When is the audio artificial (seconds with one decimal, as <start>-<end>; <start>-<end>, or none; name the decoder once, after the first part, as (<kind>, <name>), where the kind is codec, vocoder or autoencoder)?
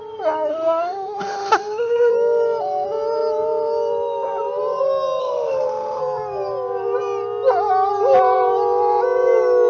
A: 0.5-2.1 (autoencoder, DAC-VAE); 5.2-6.0